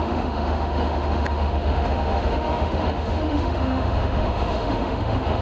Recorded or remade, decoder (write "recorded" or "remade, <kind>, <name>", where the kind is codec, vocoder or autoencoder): remade, autoencoder, DAC-VAE